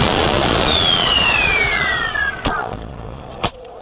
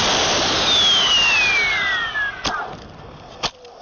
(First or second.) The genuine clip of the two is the second